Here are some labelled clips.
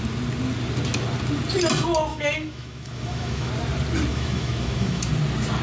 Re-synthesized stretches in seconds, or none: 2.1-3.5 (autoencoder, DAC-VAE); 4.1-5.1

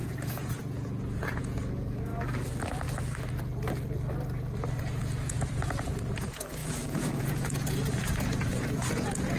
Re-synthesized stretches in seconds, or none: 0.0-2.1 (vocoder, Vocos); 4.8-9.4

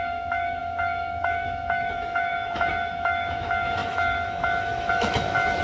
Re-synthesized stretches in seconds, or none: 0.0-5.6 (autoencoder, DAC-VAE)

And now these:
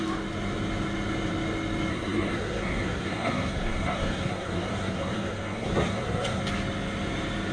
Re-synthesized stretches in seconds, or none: 1.9-6.4 (codec, SNAC)

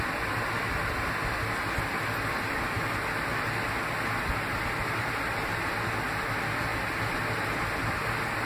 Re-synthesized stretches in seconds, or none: none